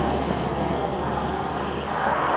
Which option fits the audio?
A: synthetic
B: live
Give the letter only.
A